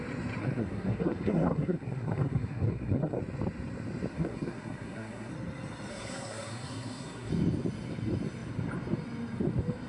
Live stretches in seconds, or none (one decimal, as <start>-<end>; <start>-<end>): 0.0-0.4; 3.2-4.1; 5.3-5.9; 7.3-9.9